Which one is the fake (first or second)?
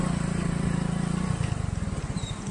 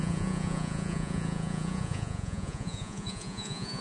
second